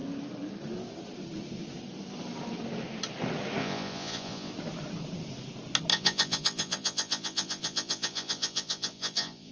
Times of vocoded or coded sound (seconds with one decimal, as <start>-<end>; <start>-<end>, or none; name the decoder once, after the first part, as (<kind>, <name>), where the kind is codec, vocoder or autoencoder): 3.6-4.5 (vocoder, Vocos); 5.9-9.5